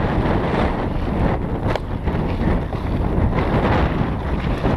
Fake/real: real